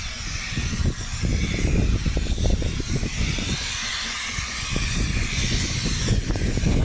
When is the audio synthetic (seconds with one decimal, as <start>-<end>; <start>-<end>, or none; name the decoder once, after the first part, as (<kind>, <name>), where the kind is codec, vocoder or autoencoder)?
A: 0.0-1.3 (vocoder, Vocos); 2.9-6.8